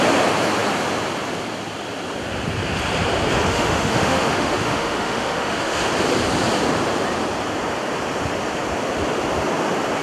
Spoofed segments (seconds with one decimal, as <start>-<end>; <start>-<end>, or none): 3.5-5.8